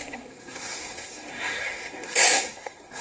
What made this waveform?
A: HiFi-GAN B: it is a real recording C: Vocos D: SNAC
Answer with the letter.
D